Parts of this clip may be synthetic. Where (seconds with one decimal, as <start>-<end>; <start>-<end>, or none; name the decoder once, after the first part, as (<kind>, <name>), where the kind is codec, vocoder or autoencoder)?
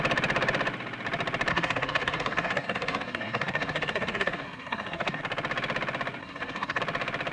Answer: 1.5-5.2 (codec, SNAC); 6.2-6.8